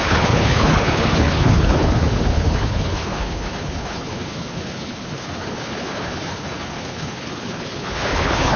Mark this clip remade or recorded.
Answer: remade